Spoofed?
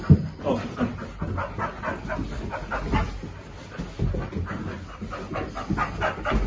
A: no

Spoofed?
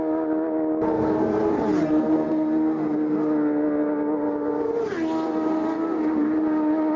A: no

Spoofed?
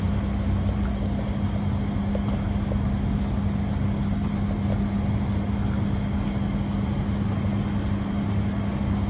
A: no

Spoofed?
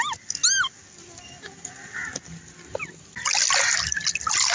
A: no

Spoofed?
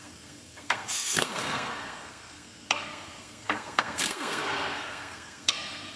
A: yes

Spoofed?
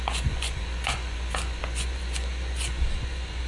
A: yes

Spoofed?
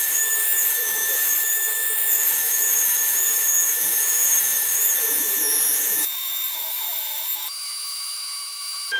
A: yes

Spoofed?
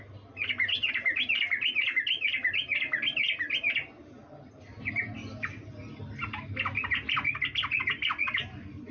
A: no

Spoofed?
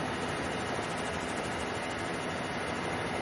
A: no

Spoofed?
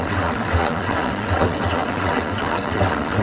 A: yes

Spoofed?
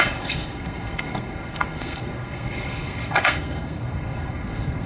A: yes